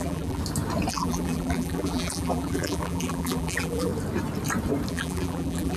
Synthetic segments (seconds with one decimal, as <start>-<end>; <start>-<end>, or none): 0.0-0.4; 0.9-3.9; 4.9-5.8